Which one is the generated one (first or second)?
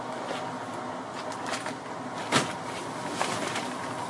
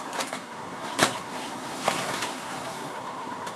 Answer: second